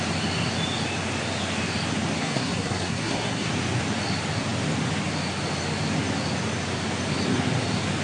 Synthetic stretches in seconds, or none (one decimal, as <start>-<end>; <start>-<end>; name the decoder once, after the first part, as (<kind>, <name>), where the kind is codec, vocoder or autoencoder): 2.2-3.5 (codec, SNAC)